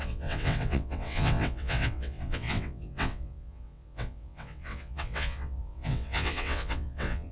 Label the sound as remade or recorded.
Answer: remade